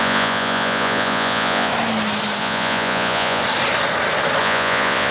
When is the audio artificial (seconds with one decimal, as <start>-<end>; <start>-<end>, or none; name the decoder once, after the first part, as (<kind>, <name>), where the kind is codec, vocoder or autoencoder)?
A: 0.0-1.7 (vocoder, Vocos); 2.4-3.4; 4.4-5.1